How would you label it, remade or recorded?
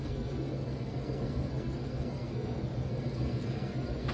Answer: remade